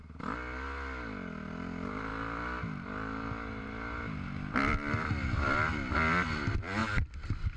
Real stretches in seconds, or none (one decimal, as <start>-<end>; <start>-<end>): 0.0-7.6